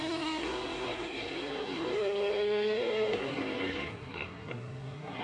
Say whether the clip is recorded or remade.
remade